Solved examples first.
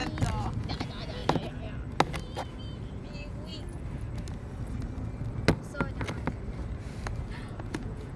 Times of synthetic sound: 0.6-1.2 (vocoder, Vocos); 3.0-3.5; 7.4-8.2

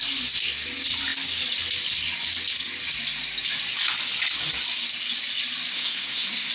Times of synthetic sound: 5.7-6.5 (codec, SNAC)

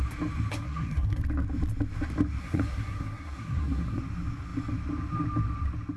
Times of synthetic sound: 0.5-1.2 (codec, SNAC); 2.4-4.0

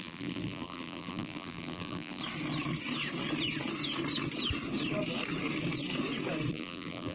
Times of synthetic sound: 0.0-2.2 (vocoder, BigVGAN v2); 6.5-7.1

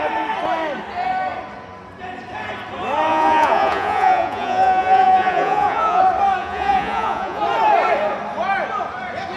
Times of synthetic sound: 3.1-6.0 (vocoder, Vocos); 6.4-7.4

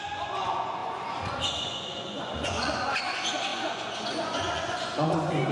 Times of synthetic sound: 0.0-5.5 (vocoder, Vocos)

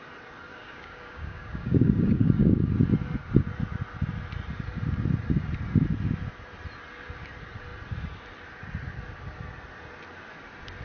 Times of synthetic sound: 0.5-2.7 (codec, DAC)